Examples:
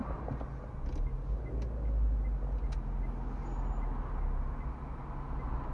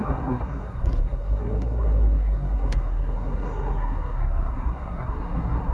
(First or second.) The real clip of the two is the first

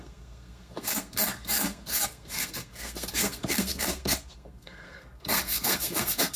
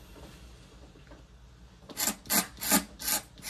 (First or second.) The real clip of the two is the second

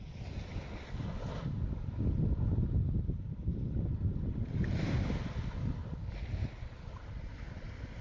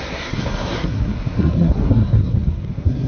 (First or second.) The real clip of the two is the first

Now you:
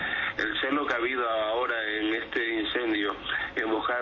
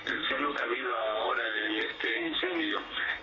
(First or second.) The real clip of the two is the first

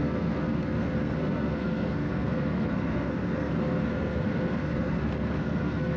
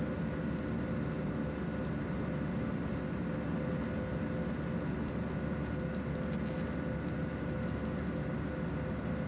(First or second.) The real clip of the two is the second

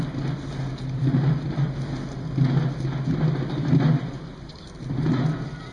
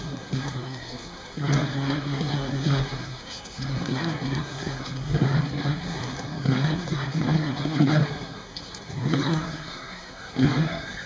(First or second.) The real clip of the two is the first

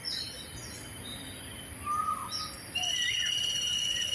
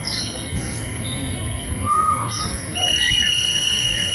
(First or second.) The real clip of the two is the first